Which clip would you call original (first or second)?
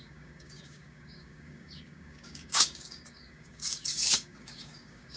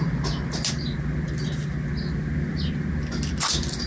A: second